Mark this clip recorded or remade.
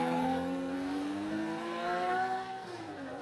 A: remade